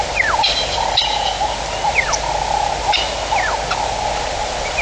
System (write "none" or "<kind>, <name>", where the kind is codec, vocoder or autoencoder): none